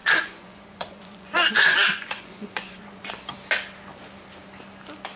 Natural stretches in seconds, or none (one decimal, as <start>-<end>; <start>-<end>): 3.1-5.2